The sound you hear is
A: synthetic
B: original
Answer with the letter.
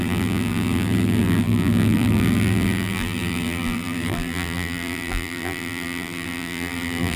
A